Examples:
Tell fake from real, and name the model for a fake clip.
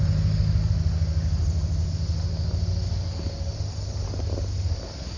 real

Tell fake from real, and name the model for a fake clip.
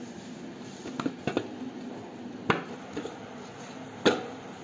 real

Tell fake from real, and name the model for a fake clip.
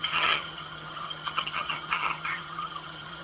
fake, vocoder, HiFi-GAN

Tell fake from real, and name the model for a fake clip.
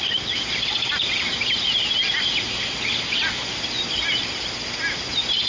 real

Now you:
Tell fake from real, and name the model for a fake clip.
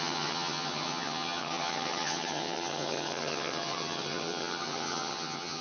fake, vocoder, HiFi-GAN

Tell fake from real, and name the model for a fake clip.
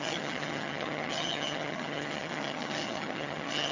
fake, vocoder, HiFi-GAN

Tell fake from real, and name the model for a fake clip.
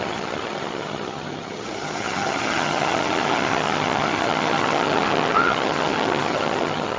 fake, vocoder, HiFi-GAN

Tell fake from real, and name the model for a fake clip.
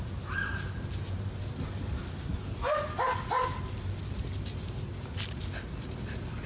real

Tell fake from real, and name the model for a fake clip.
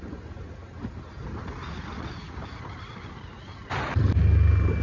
real